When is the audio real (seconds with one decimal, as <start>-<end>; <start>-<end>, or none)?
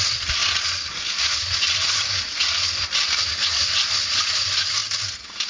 0.0-5.5